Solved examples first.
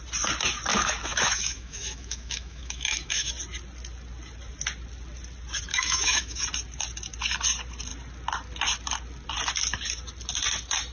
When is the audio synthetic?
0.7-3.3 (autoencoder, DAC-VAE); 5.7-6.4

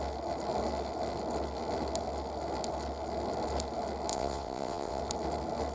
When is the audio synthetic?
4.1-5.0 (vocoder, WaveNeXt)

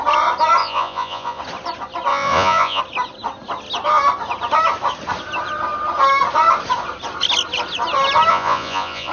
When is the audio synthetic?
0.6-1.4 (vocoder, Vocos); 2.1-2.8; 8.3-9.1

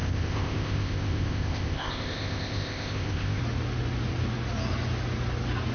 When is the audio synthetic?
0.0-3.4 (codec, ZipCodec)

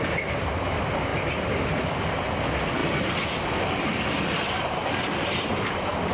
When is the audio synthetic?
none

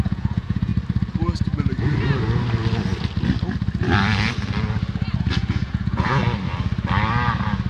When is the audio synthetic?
0.0-0.7 (vocoder, Vocos); 5.3-6.2

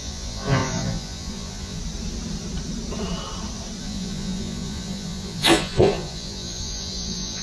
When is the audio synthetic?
0.0-1.8 (vocoder, Vocos); 3.8-7.4

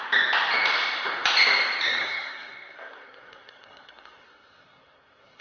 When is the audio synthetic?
2.0-5.4 (codec, SNAC)